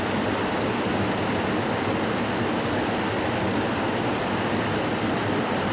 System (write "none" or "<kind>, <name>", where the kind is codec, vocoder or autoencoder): none